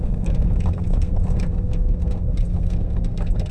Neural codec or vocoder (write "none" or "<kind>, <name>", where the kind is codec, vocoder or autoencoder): codec, SNAC